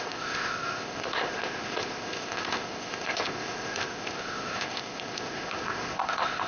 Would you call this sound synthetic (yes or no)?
yes